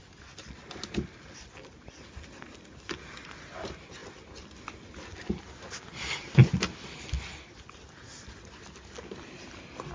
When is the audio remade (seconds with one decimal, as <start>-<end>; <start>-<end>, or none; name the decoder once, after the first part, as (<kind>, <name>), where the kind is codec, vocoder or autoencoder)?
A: none